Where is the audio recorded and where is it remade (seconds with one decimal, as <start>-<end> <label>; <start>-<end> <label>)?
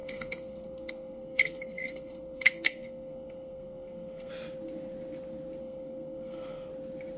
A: 0.0-4.3 remade; 4.3-5.6 recorded; 5.6-6.7 remade; 6.7-7.2 recorded